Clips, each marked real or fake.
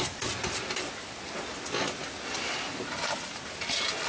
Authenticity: real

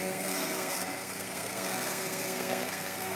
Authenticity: fake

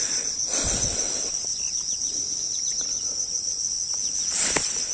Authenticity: real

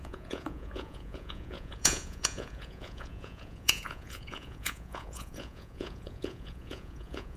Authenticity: fake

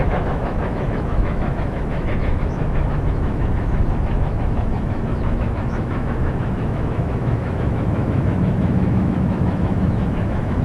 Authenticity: fake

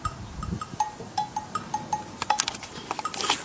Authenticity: real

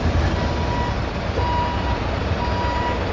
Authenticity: real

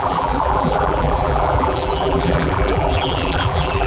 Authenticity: fake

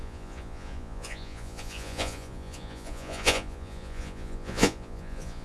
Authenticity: fake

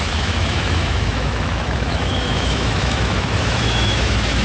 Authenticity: fake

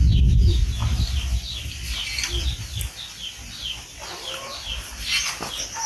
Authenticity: real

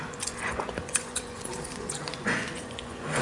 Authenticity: fake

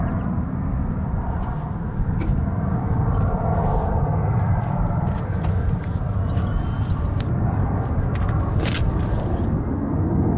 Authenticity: real